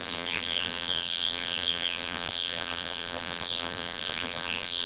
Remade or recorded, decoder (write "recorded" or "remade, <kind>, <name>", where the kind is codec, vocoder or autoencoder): remade, vocoder, BigVGAN v2